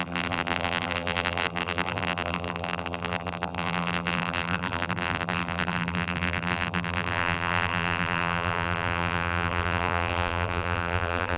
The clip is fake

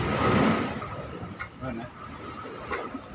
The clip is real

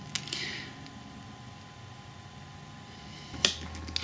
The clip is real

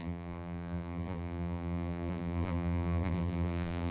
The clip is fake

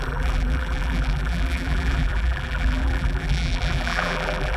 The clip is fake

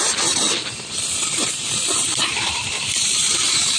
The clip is fake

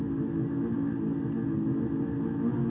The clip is real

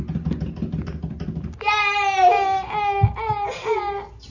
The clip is real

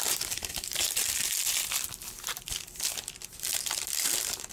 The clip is fake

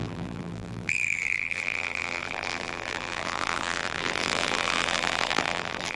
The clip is fake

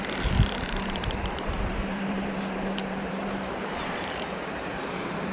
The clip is fake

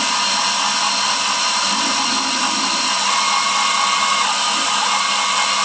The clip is fake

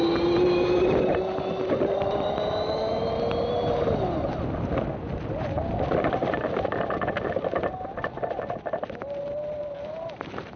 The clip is real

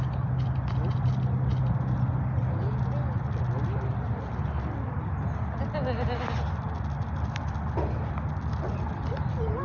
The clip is real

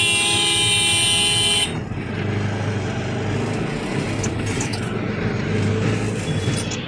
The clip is real